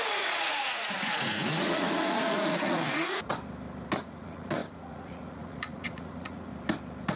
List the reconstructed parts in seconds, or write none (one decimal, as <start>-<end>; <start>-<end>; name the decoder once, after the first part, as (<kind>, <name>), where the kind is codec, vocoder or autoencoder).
0.0-3.3 (vocoder, Vocos); 4.0-6.5